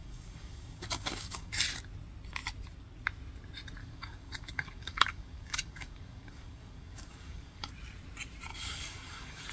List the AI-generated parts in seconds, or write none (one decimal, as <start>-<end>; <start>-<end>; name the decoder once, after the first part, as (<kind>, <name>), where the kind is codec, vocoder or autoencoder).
0.0-1.6 (codec, DAC); 3.8-7.7; 8.5-9.5